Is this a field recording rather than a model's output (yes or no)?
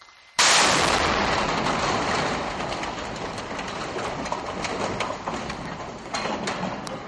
yes